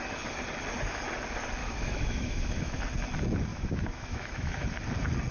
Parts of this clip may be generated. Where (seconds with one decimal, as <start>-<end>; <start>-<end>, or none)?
1.6-2.8; 3.5-4.6